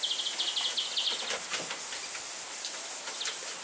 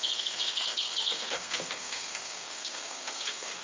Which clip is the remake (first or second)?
second